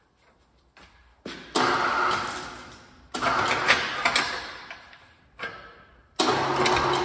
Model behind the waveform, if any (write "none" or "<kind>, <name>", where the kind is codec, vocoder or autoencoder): none